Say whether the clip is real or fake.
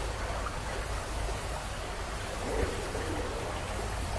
real